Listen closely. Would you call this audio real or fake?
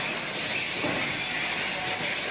real